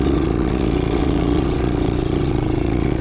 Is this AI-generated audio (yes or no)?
yes